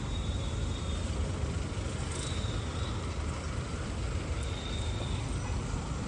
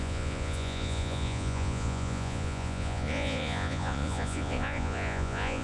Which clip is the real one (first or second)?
first